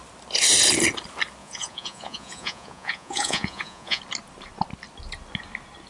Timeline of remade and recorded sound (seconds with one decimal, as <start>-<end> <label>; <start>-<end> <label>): 0.0-1.4 recorded; 1.4-4.0 remade; 4.0-5.9 recorded